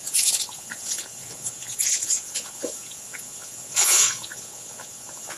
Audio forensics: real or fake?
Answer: fake